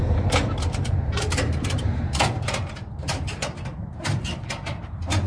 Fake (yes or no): yes